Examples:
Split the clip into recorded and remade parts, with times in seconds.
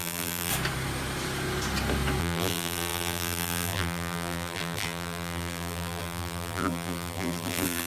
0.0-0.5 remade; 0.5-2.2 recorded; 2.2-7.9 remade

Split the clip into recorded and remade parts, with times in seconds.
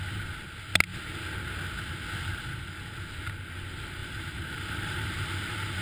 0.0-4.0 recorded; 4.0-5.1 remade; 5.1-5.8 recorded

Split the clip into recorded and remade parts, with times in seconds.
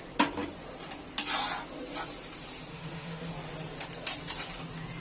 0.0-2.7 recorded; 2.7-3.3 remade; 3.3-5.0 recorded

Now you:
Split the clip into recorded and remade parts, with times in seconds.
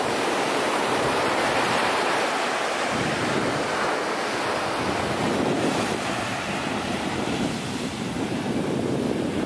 0.0-4.0 remade; 4.0-5.1 recorded; 5.1-9.5 remade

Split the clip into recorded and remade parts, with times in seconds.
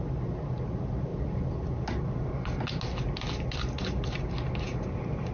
0.0-5.3 recorded